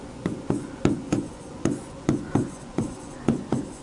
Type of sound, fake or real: fake